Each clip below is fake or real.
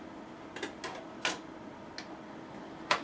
real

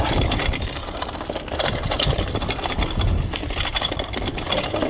real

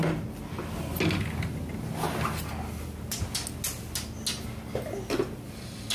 real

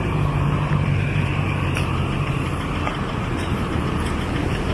fake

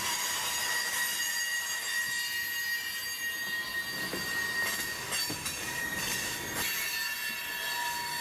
real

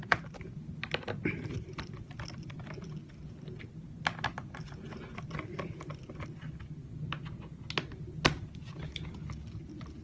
real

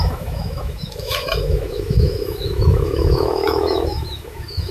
fake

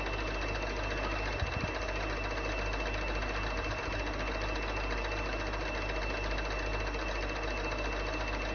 real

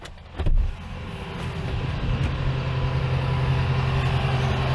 real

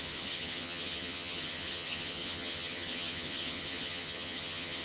fake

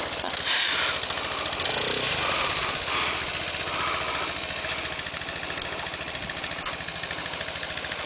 real